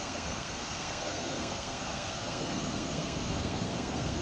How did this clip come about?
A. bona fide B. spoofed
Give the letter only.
B